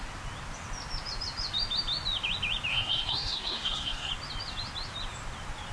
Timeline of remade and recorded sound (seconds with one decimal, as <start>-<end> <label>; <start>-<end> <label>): 0.0-2.7 recorded; 2.7-4.1 remade; 4.1-5.7 recorded